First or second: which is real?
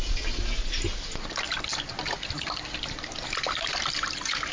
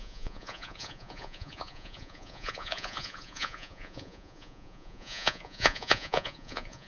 first